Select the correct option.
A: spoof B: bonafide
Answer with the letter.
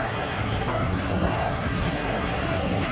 A